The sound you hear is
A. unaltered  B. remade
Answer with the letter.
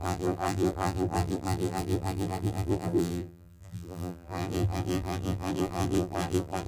B